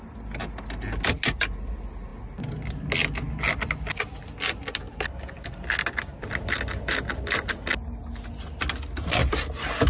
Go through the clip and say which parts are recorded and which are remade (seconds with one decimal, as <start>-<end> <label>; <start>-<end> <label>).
0.0-9.9 recorded